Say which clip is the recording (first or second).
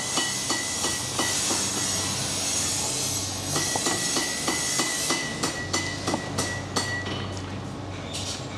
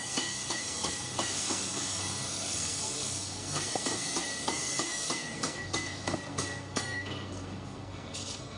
first